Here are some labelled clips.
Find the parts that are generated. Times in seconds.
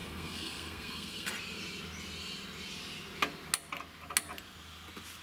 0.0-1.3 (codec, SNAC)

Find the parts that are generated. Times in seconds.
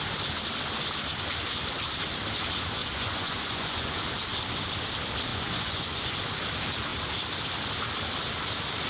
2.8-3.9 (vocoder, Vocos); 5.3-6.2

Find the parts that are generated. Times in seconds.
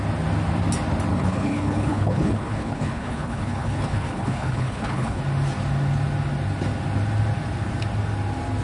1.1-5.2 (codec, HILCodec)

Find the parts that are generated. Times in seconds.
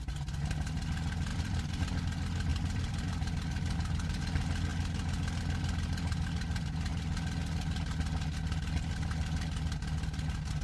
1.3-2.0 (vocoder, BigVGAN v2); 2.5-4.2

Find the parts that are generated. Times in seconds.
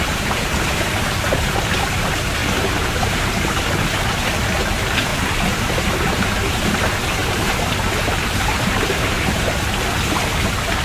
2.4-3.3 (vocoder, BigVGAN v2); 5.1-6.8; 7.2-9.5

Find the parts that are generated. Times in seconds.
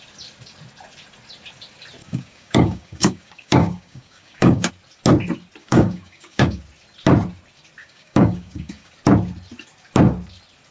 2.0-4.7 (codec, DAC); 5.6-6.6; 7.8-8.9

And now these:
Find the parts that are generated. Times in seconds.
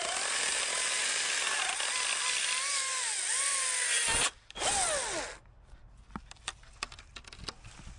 none